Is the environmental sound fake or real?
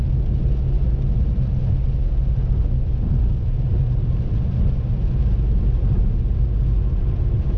real